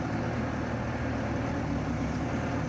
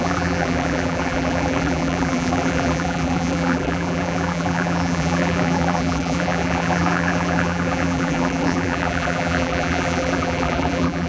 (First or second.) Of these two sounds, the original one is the first